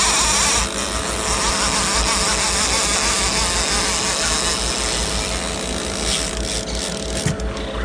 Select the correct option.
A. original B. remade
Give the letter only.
A